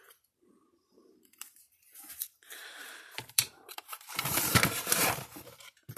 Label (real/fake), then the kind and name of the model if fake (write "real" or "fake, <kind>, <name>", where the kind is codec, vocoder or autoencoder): fake, vocoder, BigVGAN v2